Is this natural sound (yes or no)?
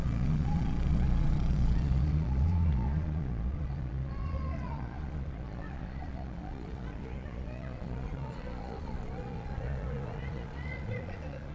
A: no